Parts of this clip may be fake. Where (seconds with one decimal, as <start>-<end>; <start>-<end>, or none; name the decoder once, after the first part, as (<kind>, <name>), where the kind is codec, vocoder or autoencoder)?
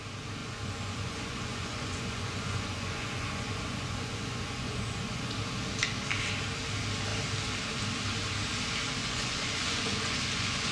0.4-5.3 (vocoder, Vocos); 9.0-10.7